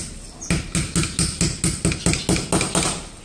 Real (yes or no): yes